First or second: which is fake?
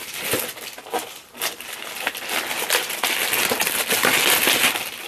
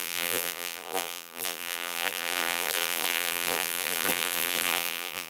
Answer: second